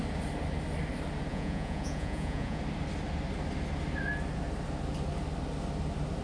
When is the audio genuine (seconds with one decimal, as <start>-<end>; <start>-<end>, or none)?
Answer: 0.0-1.3; 2.6-6.2